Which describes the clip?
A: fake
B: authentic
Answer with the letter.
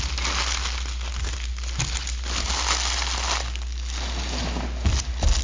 B